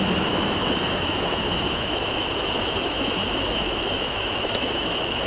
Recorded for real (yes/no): no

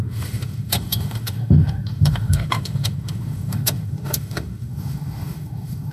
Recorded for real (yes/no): no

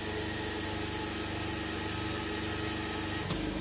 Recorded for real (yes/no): yes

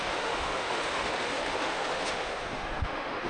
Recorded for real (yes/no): no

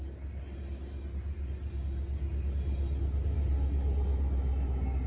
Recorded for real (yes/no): yes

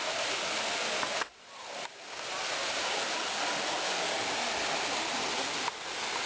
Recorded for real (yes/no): yes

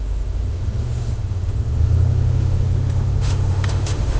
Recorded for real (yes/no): no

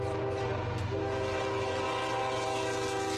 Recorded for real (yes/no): yes